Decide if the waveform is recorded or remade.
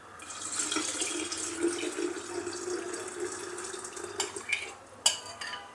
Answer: recorded